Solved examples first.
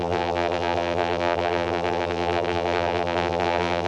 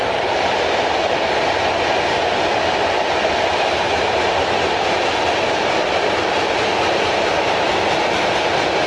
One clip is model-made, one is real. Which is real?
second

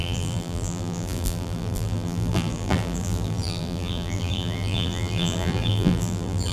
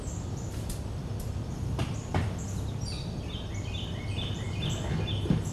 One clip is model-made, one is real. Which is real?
second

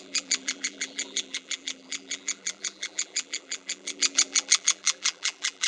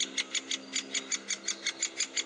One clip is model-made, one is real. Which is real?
second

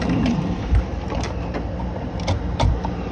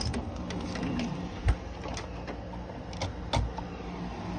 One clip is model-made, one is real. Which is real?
second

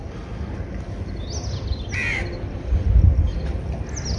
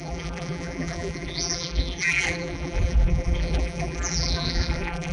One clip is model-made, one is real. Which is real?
first